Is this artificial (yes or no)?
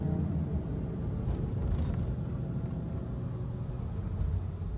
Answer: no